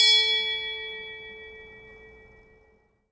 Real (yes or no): yes